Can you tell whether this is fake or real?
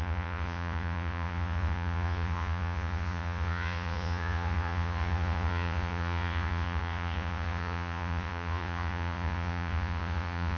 fake